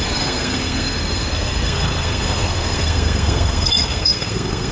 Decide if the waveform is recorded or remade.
remade